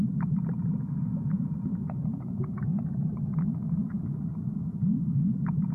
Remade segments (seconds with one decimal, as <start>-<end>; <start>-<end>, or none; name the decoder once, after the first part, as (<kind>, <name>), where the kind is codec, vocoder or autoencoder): 0.6-3.1 (vocoder, Vocos)